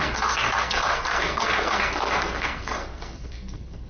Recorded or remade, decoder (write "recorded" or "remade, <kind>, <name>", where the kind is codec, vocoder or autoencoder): remade, codec, SNAC